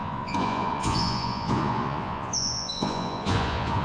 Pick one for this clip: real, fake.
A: fake